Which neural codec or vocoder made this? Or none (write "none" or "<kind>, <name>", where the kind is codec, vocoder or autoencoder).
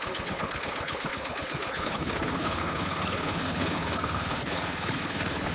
codec, HILCodec